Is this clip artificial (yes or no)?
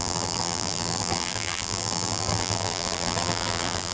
yes